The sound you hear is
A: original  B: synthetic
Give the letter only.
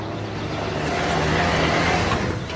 A